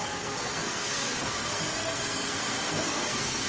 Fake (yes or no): yes